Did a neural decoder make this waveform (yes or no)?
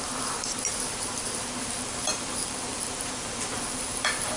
yes